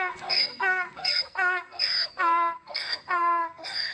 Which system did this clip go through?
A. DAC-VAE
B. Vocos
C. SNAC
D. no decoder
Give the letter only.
C